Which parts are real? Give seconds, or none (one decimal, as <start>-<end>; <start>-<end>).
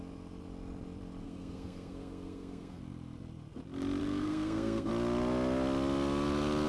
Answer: 0.0-1.2; 2.8-4.0; 4.9-6.7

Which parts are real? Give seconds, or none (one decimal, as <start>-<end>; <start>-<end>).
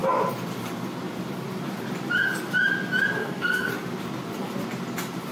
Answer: 0.0-3.2; 3.7-5.3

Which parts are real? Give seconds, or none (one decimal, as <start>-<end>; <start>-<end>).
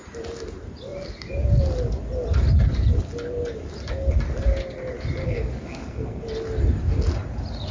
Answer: 0.0-5.2; 6.2-7.7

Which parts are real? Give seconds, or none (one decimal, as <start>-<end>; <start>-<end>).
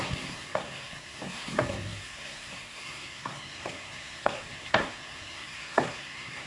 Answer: none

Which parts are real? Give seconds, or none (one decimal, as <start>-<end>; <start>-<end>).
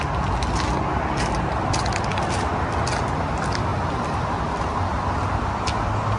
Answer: 0.0-6.2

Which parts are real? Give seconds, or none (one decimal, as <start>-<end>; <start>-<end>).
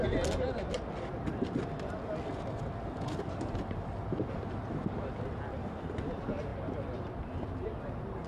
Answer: 0.0-8.3